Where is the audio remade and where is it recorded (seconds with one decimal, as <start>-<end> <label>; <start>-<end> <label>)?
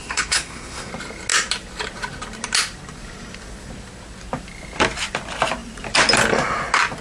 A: 0.0-0.9 remade; 0.9-7.0 recorded